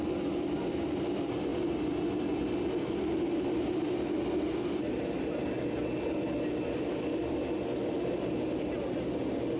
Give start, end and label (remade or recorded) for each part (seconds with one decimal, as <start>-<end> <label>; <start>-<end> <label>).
0.0-9.6 recorded